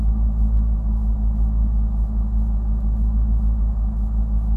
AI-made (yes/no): no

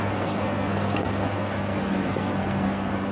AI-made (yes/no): yes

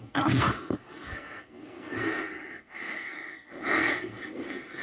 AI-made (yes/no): yes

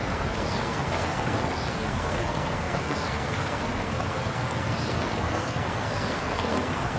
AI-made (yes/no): yes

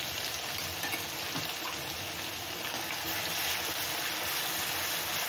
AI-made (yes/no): no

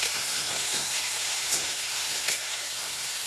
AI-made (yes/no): yes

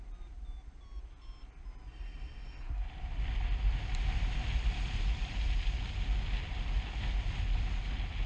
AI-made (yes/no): no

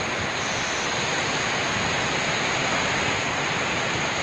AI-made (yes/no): no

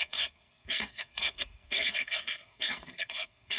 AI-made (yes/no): yes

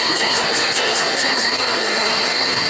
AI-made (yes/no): yes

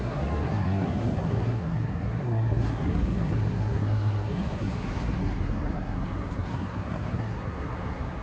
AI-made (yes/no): yes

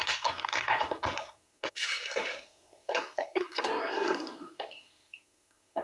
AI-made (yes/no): yes